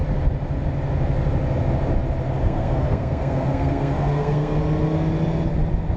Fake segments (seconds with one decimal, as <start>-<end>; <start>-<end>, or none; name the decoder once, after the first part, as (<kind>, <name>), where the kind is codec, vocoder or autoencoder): 2.4-4.6 (codec, SNAC)